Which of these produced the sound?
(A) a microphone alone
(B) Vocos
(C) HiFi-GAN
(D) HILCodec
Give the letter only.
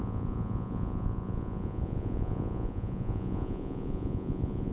B